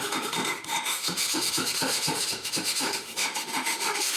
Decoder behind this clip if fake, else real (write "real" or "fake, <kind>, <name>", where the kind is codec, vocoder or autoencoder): fake, autoencoder, DAC-VAE